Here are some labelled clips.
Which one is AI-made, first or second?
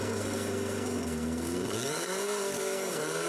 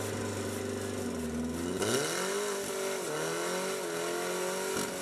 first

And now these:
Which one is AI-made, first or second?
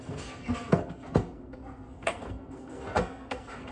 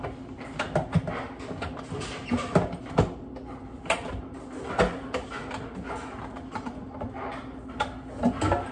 first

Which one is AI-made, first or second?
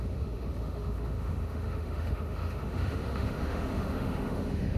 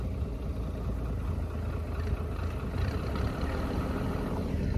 first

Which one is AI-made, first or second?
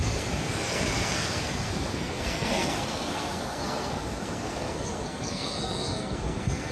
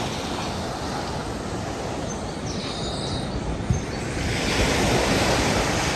first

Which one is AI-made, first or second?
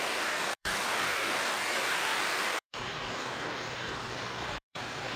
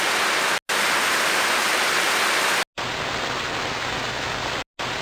first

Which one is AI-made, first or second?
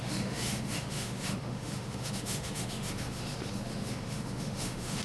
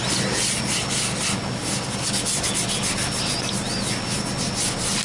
first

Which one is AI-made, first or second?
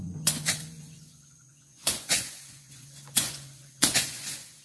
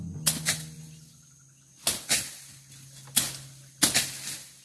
first